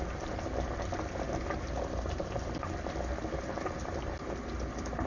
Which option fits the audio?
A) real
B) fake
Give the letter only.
A